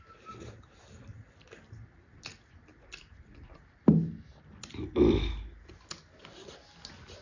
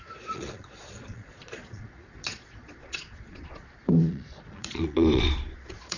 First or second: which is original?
first